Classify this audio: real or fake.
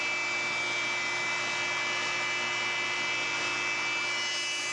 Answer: real